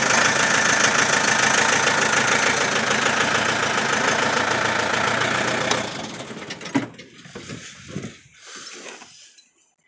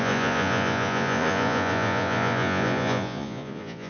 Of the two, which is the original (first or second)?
first